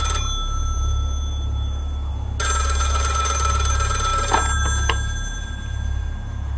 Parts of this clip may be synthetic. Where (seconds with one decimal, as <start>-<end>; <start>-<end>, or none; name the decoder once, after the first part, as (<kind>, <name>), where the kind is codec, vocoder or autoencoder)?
0.6-2.1 (vocoder, BigVGAN v2); 4.1-6.6